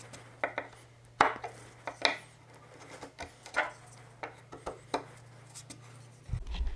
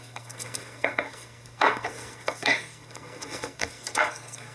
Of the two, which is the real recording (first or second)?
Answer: first